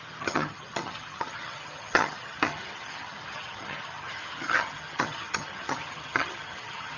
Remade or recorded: remade